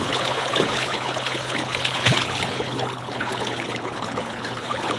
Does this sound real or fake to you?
fake